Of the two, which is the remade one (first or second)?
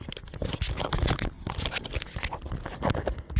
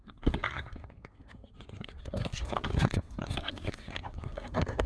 second